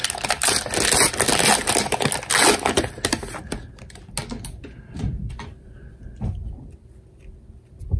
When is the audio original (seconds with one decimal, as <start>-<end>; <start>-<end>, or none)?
0.0-4.8